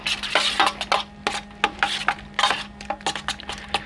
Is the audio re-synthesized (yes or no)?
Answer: no